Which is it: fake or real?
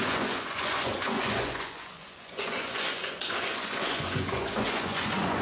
fake